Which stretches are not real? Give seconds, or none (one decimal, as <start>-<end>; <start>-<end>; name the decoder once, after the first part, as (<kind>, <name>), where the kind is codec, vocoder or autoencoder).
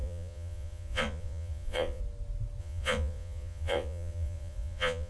0.0-2.0 (vocoder, Vocos); 2.6-5.1